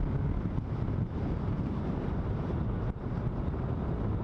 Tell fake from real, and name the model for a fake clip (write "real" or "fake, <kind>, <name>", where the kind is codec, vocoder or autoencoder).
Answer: real